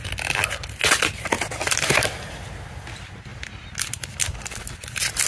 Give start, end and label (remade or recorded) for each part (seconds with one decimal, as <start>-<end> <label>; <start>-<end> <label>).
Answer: 0.0-5.3 recorded